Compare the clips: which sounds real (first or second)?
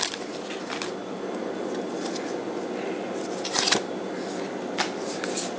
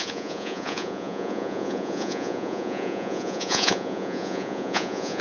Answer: first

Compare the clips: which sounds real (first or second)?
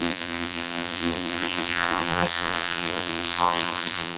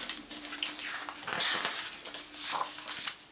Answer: second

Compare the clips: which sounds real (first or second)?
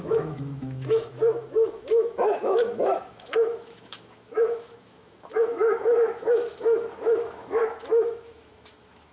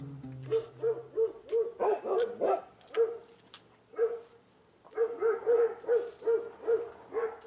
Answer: second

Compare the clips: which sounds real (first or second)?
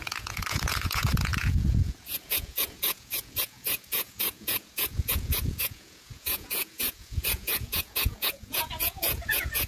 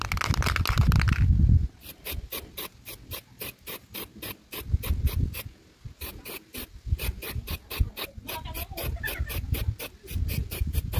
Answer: second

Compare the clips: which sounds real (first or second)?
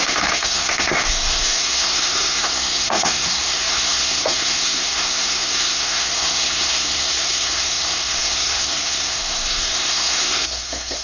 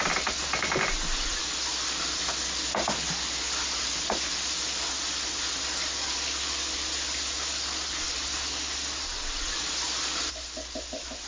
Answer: second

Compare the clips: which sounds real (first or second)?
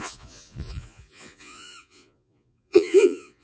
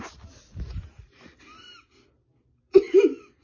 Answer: second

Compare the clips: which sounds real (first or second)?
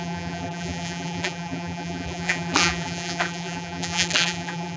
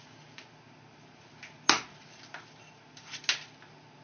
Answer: second